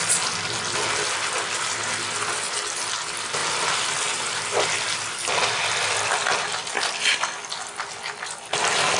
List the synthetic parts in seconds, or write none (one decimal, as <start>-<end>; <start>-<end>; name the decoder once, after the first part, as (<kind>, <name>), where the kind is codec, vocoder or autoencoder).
3.4-5.5 (vocoder, BigVGAN v2)